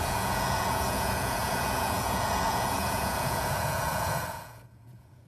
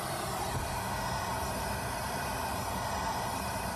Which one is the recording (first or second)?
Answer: second